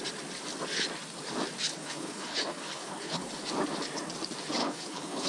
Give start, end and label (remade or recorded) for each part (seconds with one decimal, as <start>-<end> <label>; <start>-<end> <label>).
0.0-1.7 recorded; 1.7-3.3 remade; 3.3-4.6 recorded; 4.6-5.3 remade